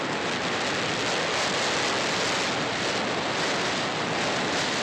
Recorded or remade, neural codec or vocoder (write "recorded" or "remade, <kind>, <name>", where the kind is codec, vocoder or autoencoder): recorded